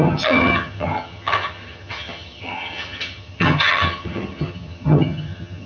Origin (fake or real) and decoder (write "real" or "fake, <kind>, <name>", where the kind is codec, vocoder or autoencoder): fake, vocoder, HiFi-GAN